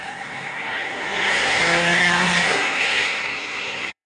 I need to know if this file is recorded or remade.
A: remade